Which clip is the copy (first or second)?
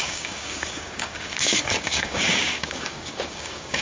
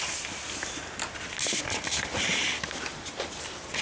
first